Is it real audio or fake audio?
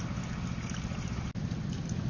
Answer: real